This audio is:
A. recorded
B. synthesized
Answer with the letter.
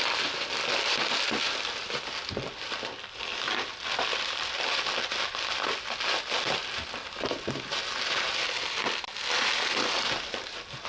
B